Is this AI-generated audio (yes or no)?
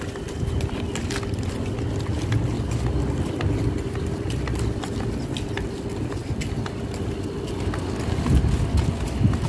no